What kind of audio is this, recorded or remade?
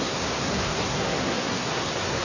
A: remade